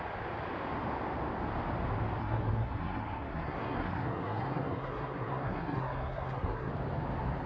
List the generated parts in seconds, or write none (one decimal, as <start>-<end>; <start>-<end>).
2.2-6.7